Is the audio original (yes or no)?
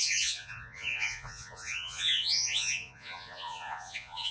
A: no